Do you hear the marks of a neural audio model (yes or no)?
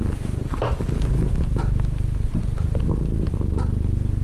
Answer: no